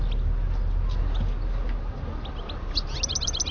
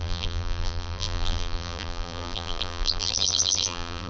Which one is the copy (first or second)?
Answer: second